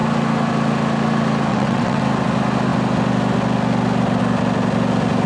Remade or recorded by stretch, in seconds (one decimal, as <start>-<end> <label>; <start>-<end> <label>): 0.0-1.5 recorded; 1.5-2.0 remade; 2.0-5.3 recorded